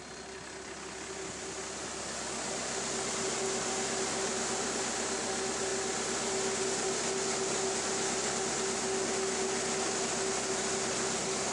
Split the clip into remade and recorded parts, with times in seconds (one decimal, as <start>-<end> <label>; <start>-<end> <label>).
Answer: 0.0-11.5 recorded